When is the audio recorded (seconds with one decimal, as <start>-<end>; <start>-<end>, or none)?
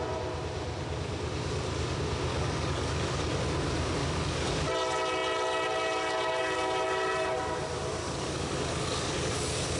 0.0-2.3; 3.2-4.0; 4.6-8.0; 9.3-9.8